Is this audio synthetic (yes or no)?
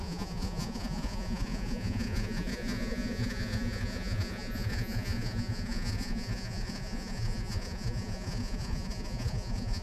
yes